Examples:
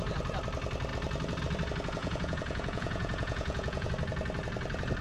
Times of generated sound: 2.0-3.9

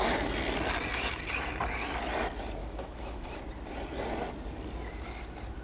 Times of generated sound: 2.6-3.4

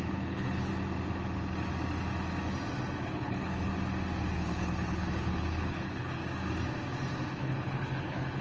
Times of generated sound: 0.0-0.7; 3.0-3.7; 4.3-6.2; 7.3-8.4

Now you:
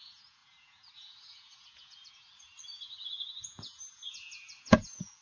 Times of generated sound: 0.0-5.2